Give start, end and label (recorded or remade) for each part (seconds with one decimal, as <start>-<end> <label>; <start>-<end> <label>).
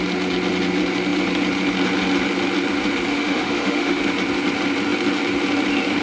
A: 0.0-3.1 recorded; 3.1-4.0 remade; 4.0-6.0 recorded